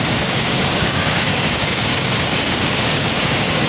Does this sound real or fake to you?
fake